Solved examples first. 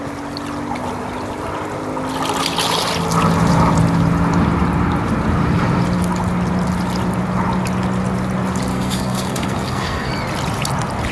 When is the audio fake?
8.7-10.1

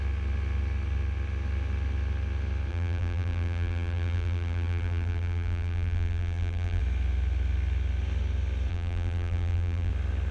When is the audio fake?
2.7-6.8; 8.7-9.9

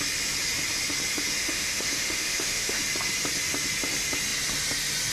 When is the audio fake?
1.4-2.8

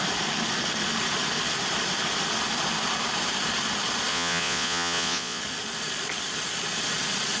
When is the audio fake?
4.1-5.4

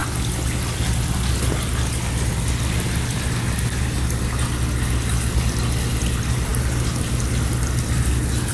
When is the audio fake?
none

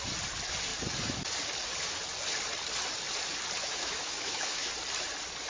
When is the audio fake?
3.6-4.7

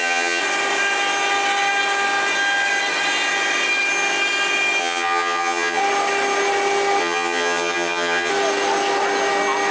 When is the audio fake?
0.0-0.4; 4.8-5.8; 7.0-8.3